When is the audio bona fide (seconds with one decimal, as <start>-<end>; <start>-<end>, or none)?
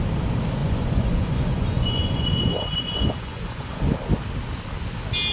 0.0-0.6; 3.8-5.3